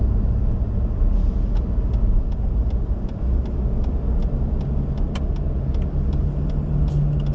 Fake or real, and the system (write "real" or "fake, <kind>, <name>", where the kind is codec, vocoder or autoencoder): real